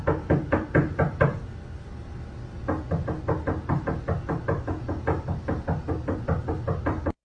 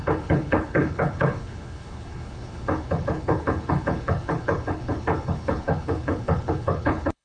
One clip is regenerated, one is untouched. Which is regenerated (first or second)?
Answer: second